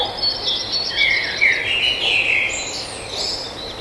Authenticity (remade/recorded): recorded